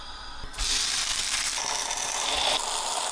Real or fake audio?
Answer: real